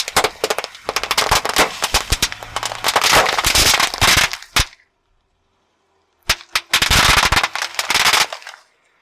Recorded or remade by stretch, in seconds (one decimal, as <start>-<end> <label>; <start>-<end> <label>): 0.0-9.0 recorded